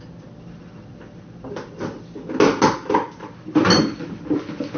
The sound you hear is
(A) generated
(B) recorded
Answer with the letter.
B